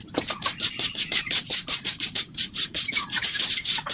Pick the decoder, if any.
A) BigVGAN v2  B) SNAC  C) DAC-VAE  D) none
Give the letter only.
A